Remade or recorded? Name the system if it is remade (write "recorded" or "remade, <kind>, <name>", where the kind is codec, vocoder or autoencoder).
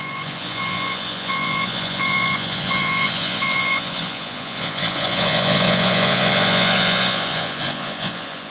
remade, vocoder, Vocos